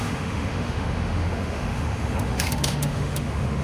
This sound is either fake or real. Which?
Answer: fake